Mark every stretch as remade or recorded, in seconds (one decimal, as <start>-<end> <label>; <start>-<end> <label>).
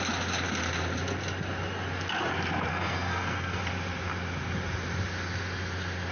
0.0-2.7 recorded; 2.7-3.6 remade; 3.6-6.1 recorded